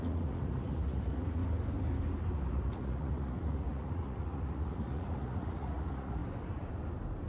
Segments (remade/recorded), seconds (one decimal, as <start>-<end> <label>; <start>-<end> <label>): 0.0-1.4 remade; 1.4-2.3 recorded; 2.3-6.2 remade; 6.2-7.3 recorded